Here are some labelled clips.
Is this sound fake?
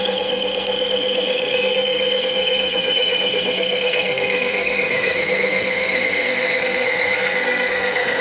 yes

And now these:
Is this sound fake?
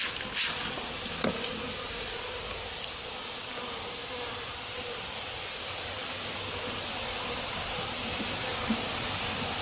no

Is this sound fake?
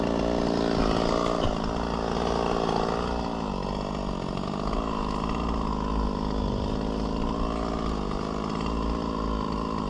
no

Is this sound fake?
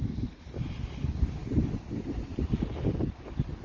no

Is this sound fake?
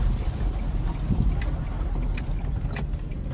no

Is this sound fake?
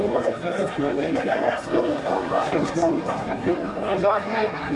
yes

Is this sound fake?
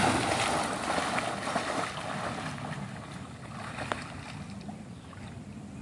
no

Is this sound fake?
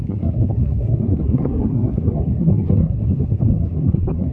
yes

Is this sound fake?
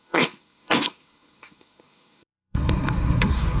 yes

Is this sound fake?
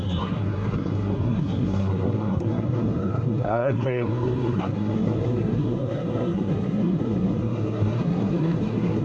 yes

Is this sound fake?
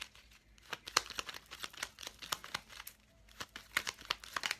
no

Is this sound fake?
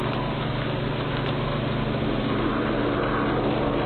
no